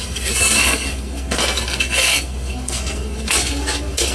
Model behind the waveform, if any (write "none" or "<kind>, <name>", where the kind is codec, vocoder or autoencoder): codec, SNAC